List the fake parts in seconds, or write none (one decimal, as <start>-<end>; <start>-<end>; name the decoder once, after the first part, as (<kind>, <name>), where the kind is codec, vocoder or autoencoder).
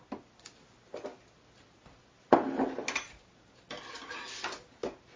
none